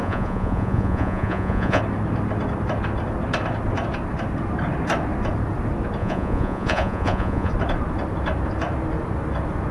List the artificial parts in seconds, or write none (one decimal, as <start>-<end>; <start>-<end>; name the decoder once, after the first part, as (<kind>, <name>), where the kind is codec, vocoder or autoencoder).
0.0-1.8 (vocoder, Vocos); 6.0-7.5

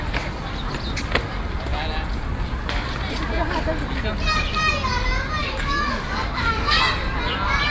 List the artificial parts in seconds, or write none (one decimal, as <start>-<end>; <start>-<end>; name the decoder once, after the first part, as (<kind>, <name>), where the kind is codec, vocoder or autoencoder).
5.4-6.8 (codec, DAC)

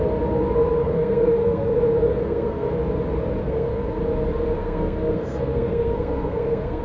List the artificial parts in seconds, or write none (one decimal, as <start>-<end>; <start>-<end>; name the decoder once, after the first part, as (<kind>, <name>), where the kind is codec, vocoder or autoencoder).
0.8-1.8 (codec, SNAC); 2.2-2.7; 3.4-4.0; 4.6-6.8

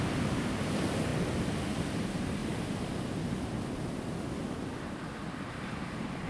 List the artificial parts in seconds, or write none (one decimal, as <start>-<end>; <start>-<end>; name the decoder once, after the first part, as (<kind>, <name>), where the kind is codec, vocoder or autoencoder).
2.4-3.3 (vocoder, BigVGAN v2)

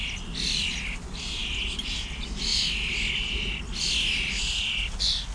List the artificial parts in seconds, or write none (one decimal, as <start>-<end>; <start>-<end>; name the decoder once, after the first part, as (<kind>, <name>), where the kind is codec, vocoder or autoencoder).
none

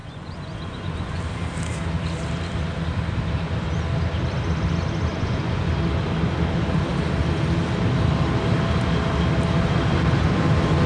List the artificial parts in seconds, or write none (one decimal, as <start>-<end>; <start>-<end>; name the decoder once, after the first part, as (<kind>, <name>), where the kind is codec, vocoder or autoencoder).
0.0-1.2 (vocoder, Vocos); 5.1-5.7

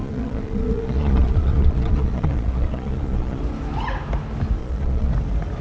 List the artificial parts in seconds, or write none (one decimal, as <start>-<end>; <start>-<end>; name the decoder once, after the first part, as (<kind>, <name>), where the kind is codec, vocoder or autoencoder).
0.0-3.4 (vocoder, Vocos); 4.6-5.1